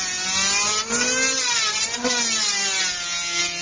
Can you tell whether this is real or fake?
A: real